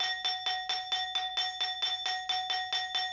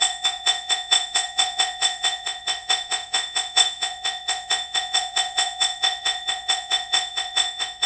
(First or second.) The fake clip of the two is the second